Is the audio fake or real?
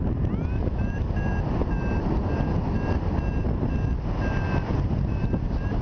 real